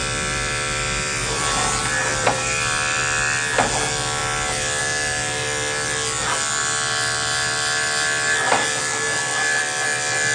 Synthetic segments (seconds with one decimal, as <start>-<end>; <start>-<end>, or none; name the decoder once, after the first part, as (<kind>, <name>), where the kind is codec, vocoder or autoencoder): 0.0-3.0 (vocoder, BigVGAN v2); 4.2-4.8; 6.6-9.6